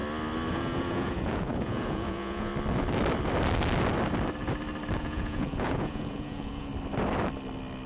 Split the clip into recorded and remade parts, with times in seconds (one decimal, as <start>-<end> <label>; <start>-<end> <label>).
0.0-0.5 recorded; 0.5-2.5 remade; 2.5-5.0 recorded; 5.0-6.7 remade; 6.7-7.9 recorded